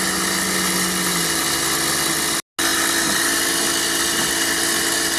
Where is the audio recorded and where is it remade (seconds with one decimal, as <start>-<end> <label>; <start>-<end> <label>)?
0.0-2.7 recorded; 2.7-4.3 remade; 4.3-5.2 recorded